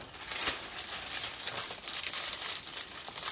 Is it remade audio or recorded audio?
recorded